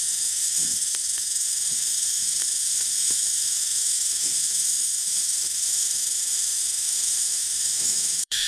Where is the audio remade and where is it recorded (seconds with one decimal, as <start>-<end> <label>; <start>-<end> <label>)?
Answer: 0.0-8.5 remade